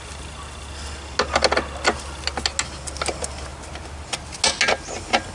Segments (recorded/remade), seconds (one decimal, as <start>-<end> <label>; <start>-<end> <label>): 0.0-5.3 recorded